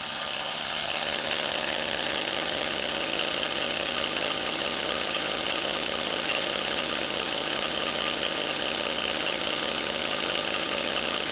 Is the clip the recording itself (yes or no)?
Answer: no